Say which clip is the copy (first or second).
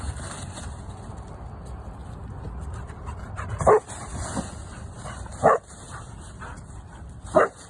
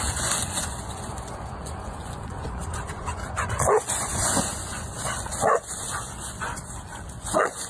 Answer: second